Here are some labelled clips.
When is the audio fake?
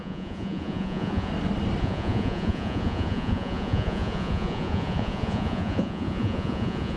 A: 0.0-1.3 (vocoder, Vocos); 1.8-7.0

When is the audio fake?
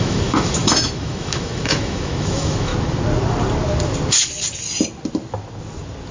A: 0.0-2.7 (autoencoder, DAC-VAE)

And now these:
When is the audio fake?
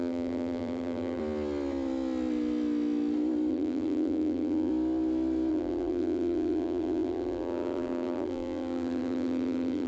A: 0.0-1.2 (vocoder, BigVGAN v2); 3.5-4.7; 5.5-9.9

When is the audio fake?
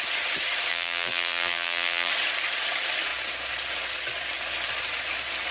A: 0.7-2.1 (vocoder, BigVGAN v2)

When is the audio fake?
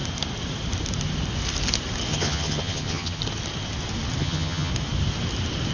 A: 2.1-3.2 (vocoder, HiFi-GAN); 4.2-4.7